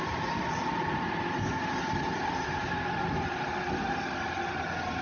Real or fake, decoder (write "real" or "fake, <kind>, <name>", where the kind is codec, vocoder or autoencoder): real